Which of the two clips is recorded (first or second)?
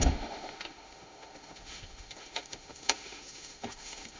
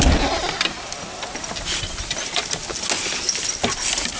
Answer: second